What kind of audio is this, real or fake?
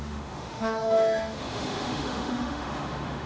fake